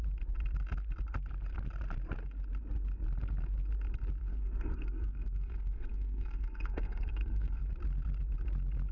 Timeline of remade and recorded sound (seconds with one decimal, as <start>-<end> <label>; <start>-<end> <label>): 0.0-4.2 recorded; 4.2-7.6 remade; 7.6-8.9 recorded